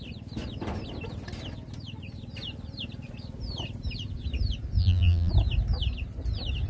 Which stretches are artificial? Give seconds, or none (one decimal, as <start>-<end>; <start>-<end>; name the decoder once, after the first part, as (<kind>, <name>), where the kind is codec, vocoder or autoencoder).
4.8-5.3 (vocoder, BigVGAN v2)